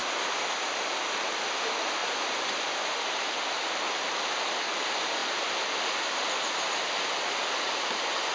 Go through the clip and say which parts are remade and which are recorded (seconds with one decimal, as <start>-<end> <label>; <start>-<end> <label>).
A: 0.0-2.0 recorded; 2.0-3.0 remade; 3.0-8.3 recorded